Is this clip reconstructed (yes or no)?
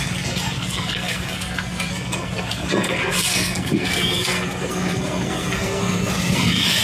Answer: yes